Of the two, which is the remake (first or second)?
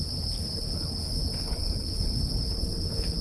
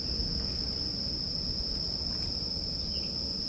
first